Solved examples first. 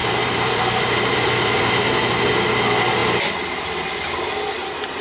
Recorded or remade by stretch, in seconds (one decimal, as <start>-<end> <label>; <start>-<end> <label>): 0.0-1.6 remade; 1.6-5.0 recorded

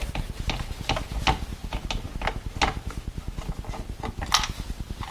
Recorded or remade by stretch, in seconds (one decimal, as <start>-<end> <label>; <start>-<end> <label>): 0.0-5.1 recorded

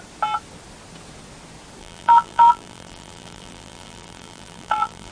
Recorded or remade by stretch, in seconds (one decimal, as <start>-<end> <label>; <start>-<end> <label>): 0.0-1.8 recorded; 1.8-5.1 remade